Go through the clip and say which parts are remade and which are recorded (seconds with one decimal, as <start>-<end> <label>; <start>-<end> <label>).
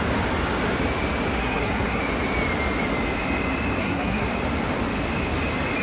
0.0-1.4 recorded; 1.4-2.0 remade; 2.0-3.8 recorded; 3.8-4.3 remade; 4.3-5.8 recorded